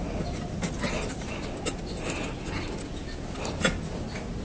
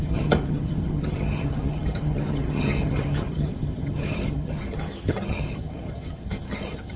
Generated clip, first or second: second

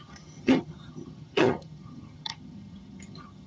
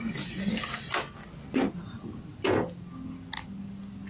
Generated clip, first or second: first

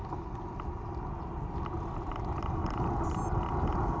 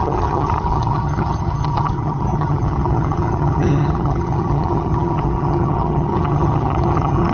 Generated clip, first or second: second